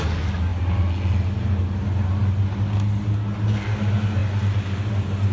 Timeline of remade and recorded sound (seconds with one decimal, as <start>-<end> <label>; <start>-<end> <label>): 0.0-5.3 recorded